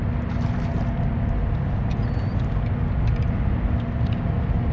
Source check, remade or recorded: recorded